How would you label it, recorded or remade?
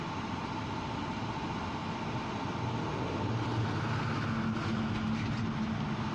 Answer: recorded